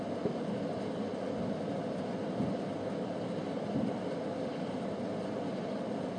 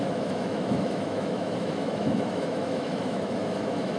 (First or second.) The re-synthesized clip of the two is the second